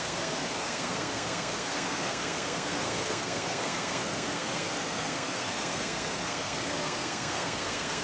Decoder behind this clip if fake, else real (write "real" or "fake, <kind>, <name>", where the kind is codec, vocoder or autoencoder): fake, codec, SNAC